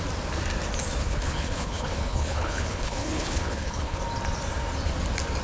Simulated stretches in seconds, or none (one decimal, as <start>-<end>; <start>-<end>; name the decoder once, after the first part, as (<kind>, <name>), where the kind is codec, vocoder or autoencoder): 1.0-4.0 (codec, HILCodec)